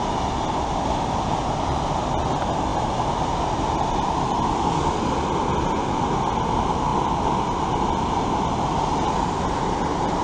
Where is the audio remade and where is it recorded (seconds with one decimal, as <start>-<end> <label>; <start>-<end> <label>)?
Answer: 0.0-10.2 recorded